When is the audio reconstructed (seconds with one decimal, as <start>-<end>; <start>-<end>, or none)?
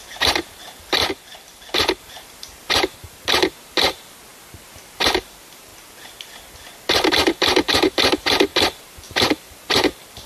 0.0-1.0; 2.0-4.3; 5.2-5.7; 7.1-8.5; 9.1-10.3